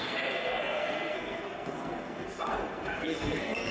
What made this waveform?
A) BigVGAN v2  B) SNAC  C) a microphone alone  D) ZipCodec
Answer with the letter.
B